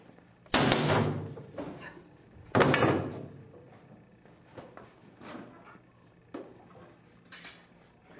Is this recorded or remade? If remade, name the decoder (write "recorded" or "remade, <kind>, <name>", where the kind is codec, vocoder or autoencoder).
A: recorded